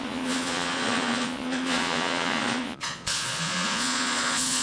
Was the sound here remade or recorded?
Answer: remade